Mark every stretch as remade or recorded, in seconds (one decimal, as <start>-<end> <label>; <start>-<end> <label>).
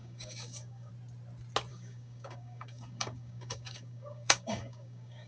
0.0-0.9 remade; 0.9-1.7 recorded; 1.7-5.3 remade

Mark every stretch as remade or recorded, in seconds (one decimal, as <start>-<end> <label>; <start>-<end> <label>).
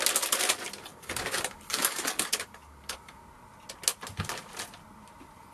0.0-0.9 recorded; 0.9-3.2 remade; 3.2-5.5 recorded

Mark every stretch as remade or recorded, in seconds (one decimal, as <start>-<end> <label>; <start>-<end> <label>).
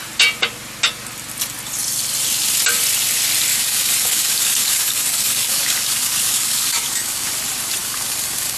0.0-3.5 recorded; 3.5-7.3 remade; 7.3-7.8 recorded; 7.8-8.6 remade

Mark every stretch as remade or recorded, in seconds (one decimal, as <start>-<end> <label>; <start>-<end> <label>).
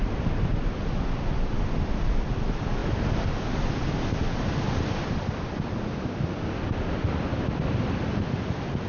0.0-8.9 recorded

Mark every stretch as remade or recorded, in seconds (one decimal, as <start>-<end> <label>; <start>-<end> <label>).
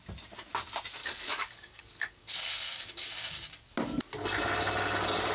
0.0-1.0 recorded; 1.0-3.7 remade; 3.7-5.3 recorded